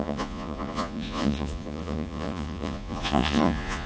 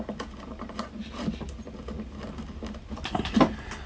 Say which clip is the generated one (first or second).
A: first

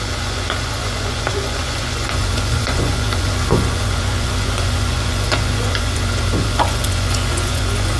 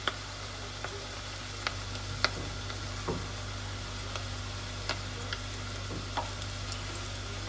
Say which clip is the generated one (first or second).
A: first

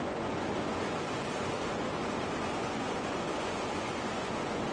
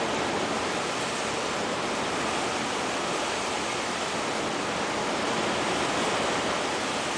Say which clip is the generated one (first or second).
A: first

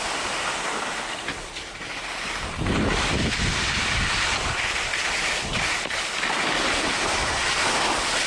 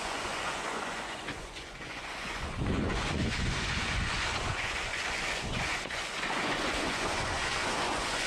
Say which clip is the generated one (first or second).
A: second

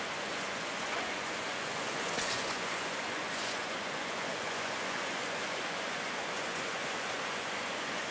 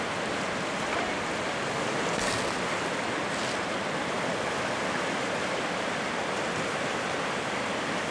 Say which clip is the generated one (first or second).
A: first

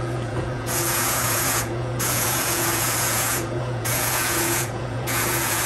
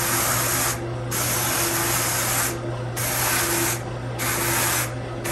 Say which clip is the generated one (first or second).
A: first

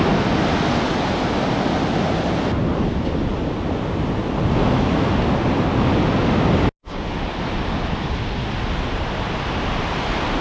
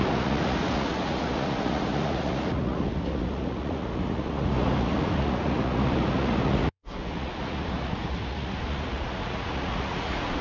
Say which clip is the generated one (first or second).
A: second